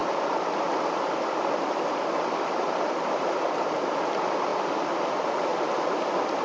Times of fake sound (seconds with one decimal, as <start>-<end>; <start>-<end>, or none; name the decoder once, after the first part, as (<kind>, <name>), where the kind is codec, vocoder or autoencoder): 0.0-3.8 (vocoder, BigVGAN v2); 5.5-6.4